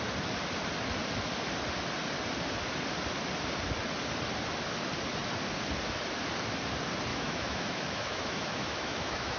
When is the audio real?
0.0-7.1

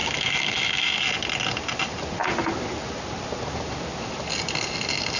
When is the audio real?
1.0-5.2

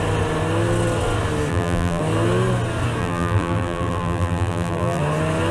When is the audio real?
0.0-1.5; 2.0-3.0; 5.0-5.5

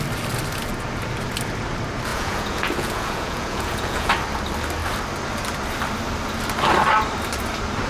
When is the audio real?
0.0-2.1; 4.1-7.9

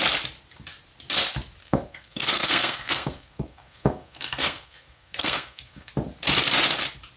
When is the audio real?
0.0-1.6; 5.9-7.2